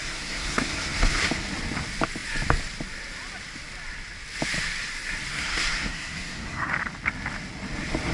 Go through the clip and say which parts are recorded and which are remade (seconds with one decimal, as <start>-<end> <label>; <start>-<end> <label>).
0.0-1.2 remade; 1.2-5.3 recorded; 5.3-6.7 remade; 6.7-8.1 recorded